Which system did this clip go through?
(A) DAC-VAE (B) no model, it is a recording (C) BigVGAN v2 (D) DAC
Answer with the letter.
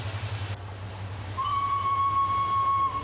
B